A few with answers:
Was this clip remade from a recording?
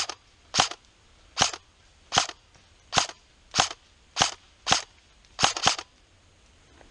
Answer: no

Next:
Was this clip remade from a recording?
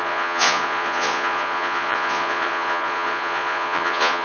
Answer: yes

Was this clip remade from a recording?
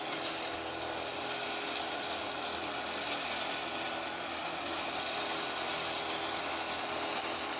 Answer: no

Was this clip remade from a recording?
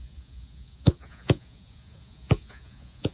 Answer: yes